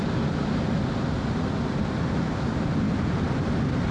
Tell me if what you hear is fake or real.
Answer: real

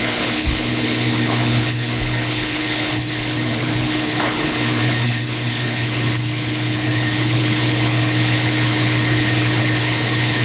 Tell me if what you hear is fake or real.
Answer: fake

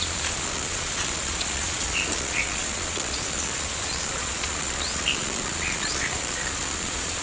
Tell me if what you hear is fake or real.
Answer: fake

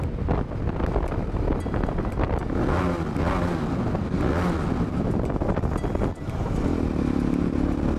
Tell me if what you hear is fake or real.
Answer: real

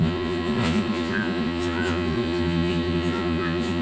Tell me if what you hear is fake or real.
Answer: fake